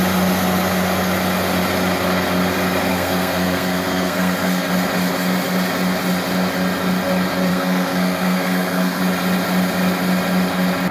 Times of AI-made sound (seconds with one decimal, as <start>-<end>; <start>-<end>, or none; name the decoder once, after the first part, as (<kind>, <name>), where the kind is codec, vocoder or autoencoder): 2.9-4.7 (codec, SNAC); 7.5-9.0